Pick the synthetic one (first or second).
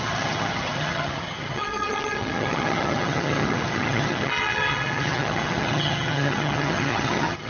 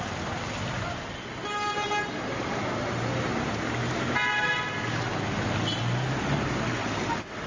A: first